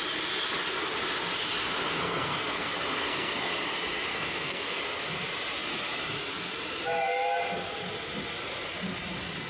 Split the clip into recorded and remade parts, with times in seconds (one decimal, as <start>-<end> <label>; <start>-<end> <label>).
0.0-2.0 recorded; 2.0-3.5 remade; 3.5-4.1 recorded; 4.1-4.8 remade; 4.8-9.5 recorded